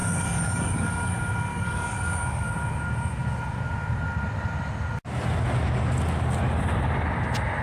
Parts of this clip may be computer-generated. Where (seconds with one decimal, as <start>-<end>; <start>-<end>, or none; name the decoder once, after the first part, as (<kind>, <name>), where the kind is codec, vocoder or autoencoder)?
0.0-1.1 (codec, DAC); 1.5-2.5